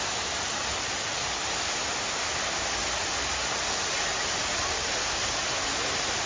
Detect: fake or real real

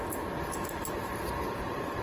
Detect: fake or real real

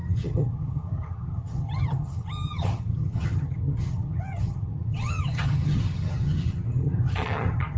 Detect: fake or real fake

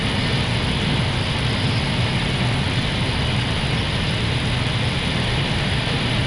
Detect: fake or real real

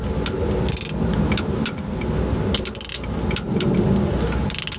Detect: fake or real real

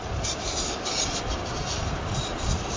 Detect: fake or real real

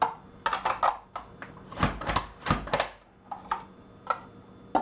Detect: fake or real real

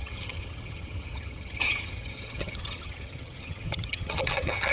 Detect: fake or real fake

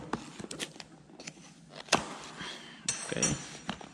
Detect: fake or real real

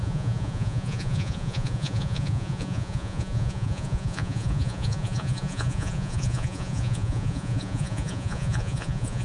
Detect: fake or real fake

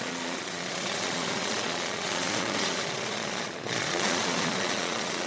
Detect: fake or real fake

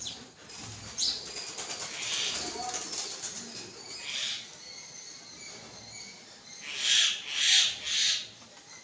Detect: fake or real real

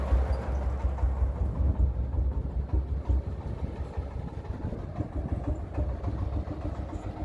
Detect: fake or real real